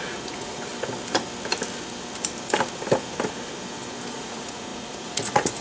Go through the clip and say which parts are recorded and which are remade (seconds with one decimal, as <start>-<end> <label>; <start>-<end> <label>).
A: 0.0-0.7 remade; 0.7-4.1 recorded; 4.1-5.6 remade